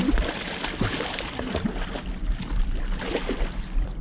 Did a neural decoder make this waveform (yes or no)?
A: no